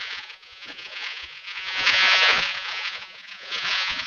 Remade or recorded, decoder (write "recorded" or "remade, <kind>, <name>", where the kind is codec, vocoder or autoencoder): remade, vocoder, Vocos